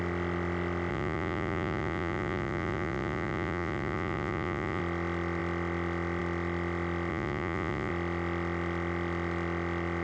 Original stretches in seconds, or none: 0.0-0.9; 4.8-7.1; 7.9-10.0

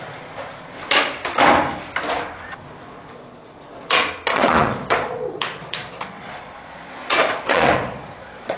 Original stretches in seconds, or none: 0.0-4.3

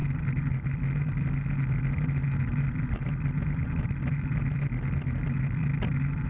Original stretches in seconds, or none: 0.0-6.3

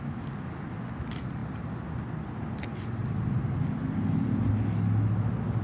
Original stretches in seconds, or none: 0.0-5.6

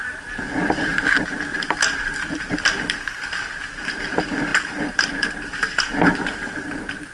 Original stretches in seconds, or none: 0.9-1.4

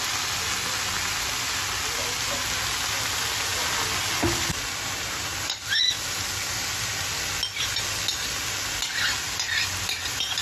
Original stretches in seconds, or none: 0.0-10.4

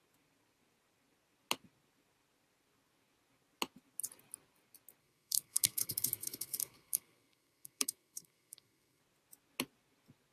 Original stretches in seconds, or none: 0.0-5.0; 9.0-10.3